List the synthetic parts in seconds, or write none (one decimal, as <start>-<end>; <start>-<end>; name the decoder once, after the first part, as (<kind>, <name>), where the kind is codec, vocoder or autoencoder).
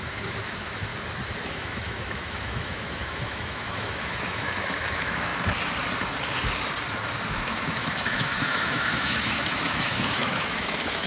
0.0-0.9 (autoencoder, DAC-VAE); 1.5-5.3; 7.3-11.1